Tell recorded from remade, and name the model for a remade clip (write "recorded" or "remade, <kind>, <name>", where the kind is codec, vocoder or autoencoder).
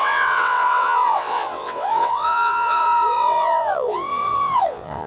remade, vocoder, WaveNeXt